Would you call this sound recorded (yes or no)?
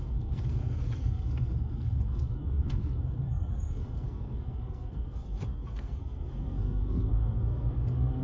no